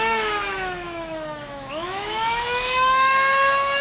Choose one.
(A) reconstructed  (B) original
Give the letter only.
A